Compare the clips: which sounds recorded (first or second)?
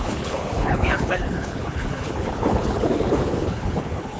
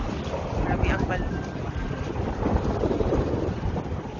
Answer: second